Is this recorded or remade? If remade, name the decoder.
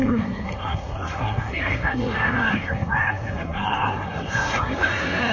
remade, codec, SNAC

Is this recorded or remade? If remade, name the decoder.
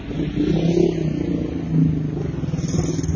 recorded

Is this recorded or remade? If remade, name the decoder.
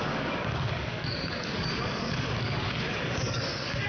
remade, codec, DAC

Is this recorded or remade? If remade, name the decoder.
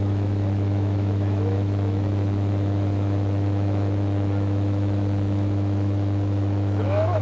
remade, autoencoder, DAC-VAE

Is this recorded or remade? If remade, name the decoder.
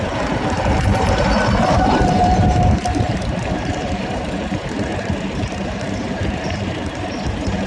remade, vocoder, BigVGAN v2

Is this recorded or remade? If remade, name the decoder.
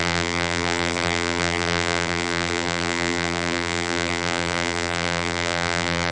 remade, vocoder, BigVGAN v2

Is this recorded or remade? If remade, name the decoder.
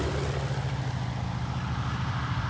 recorded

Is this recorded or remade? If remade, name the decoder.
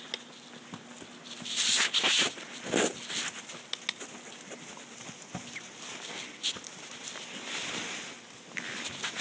recorded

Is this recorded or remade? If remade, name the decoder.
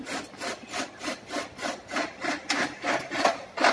recorded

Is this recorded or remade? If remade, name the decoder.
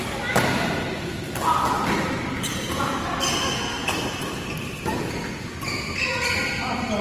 recorded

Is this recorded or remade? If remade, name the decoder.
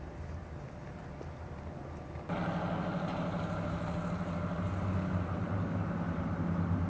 recorded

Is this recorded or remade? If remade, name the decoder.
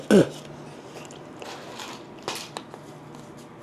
recorded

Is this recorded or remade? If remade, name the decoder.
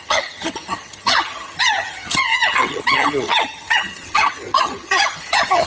remade, vocoder, HiFi-GAN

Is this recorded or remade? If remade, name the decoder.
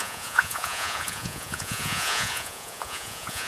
remade, vocoder, Vocos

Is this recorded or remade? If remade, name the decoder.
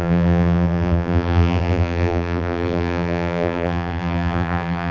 remade, vocoder, BigVGAN v2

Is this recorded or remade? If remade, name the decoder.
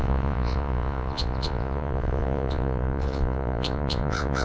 remade, vocoder, Vocos